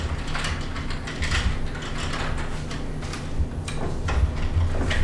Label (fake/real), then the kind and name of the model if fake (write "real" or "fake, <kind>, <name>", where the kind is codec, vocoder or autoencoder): real